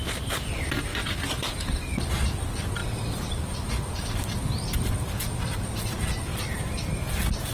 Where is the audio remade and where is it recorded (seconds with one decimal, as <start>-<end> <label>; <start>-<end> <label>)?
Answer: 0.0-2.8 recorded; 2.8-5.2 remade; 5.2-6.3 recorded; 6.3-7.5 remade